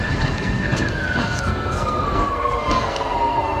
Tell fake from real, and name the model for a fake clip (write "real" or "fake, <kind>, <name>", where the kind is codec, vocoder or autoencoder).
fake, codec, SNAC